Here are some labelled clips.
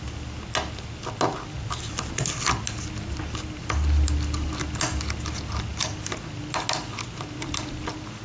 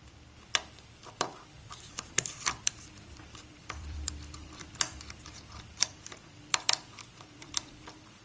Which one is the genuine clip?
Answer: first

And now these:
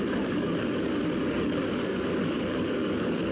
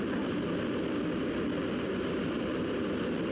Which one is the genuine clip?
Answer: second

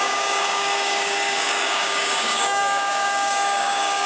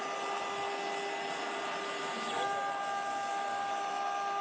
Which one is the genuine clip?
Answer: second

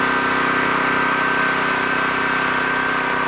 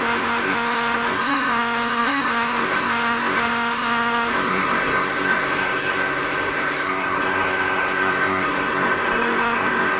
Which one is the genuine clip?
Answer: first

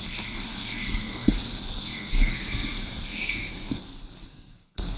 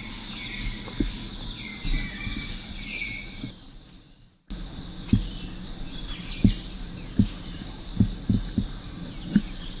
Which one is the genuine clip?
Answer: second